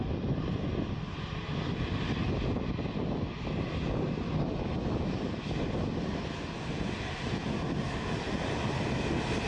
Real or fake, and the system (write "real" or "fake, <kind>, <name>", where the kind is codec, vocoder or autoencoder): real